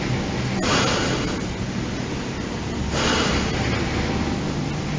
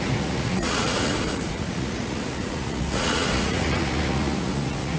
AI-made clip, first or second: second